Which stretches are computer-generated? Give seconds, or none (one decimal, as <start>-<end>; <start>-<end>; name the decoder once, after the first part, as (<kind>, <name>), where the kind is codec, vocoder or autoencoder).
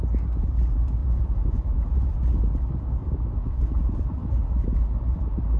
1.0-2.1 (vocoder, Vocos); 3.0-3.6; 4.2-4.7